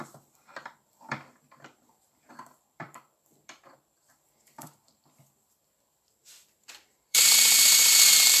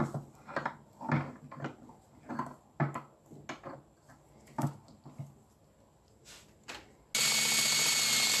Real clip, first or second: second